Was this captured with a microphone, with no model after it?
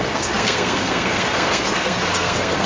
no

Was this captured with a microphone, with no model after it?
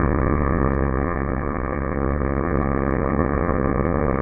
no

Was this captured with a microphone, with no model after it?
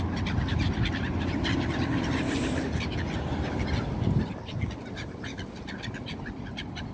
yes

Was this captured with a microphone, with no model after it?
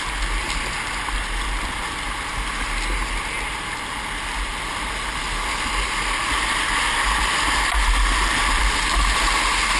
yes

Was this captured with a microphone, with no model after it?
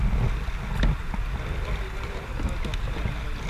yes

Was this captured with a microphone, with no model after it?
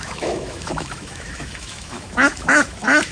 no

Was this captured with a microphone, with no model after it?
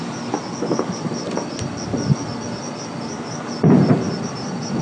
yes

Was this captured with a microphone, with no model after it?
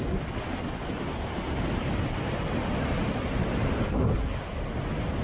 yes